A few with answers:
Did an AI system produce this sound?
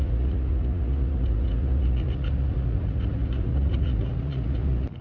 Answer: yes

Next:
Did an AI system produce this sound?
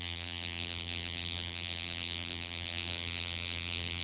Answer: yes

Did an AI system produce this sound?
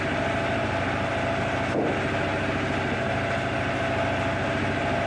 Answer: no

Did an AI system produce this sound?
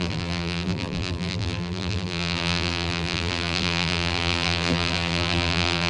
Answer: yes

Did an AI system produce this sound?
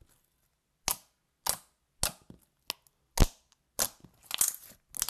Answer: no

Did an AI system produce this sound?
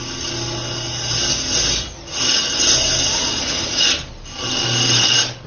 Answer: no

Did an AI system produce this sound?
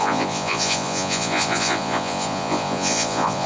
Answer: yes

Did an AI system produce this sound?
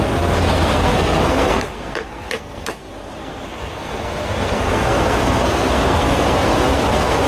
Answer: yes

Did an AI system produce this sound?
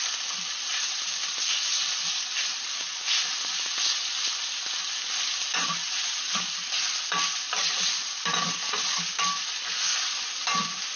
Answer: no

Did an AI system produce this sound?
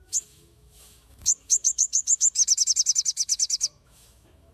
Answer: yes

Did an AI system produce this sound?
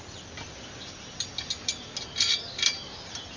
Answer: no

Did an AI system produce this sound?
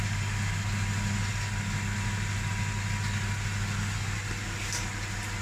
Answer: no